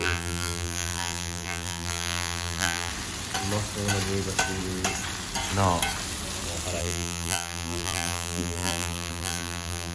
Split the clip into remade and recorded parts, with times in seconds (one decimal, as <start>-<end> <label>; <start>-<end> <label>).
0.0-2.9 remade; 2.9-6.8 recorded; 6.8-9.9 remade